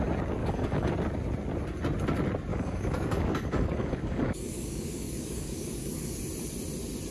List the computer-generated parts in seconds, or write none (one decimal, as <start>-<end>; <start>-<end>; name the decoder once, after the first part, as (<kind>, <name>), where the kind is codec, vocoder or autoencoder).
0.4-0.9 (codec, DAC); 2.5-6.2